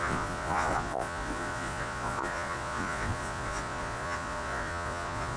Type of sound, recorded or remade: remade